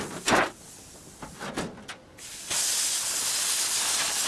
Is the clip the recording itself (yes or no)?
yes